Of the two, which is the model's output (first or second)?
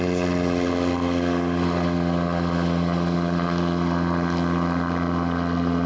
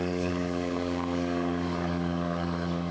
second